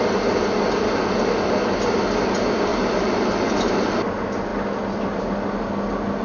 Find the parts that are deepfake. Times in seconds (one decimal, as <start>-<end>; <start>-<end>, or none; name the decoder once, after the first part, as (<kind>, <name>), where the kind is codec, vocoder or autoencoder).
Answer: 2.7-3.8 (vocoder, BigVGAN v2)